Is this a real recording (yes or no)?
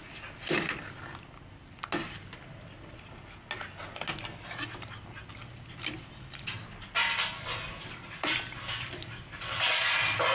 yes